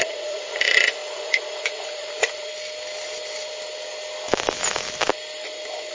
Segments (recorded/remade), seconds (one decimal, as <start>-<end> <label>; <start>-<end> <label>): 0.0-2.5 remade; 2.5-5.9 recorded